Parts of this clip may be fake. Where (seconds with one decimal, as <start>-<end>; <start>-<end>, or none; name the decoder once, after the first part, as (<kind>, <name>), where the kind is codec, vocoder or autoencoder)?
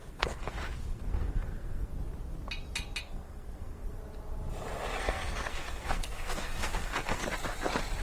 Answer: 0.0-1.9 (codec, SNAC); 3.0-4.0; 5.0-7.2